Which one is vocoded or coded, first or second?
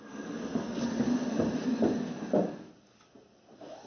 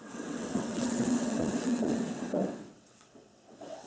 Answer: second